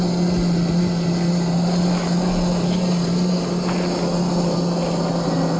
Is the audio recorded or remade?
recorded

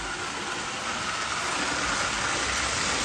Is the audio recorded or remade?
recorded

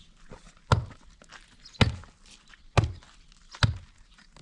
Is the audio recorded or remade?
recorded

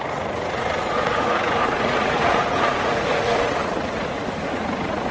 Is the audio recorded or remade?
remade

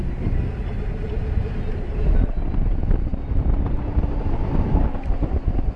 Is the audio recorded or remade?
recorded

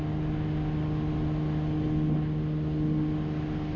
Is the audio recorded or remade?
recorded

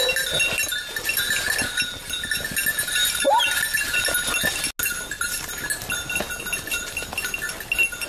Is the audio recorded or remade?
recorded